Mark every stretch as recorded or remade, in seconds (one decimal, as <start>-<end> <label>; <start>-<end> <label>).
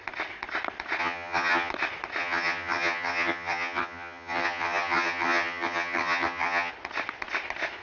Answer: 0.0-1.0 recorded; 1.0-1.7 remade; 1.7-2.2 recorded; 2.2-6.7 remade; 6.7-7.8 recorded